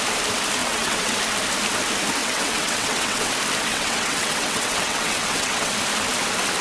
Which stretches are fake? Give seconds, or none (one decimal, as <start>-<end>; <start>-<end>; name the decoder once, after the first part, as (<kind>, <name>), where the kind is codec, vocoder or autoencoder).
0.6-1.2 (vocoder, WaveNeXt); 2.2-3.3; 3.7-5.7